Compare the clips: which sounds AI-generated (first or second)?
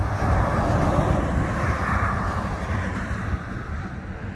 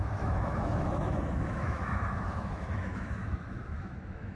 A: second